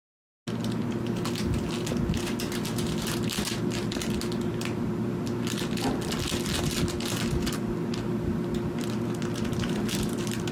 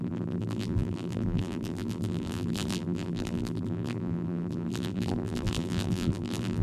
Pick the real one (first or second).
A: first